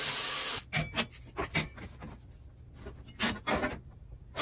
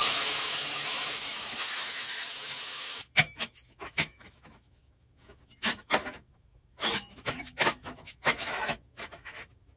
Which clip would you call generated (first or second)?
second